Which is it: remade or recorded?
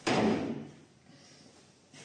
recorded